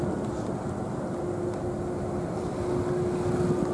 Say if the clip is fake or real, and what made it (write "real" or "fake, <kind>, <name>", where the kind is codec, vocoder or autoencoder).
real